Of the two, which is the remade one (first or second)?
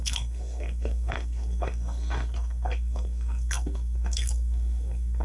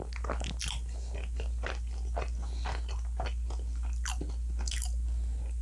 first